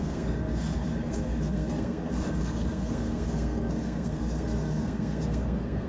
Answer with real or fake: fake